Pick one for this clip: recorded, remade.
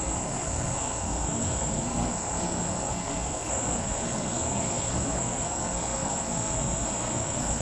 remade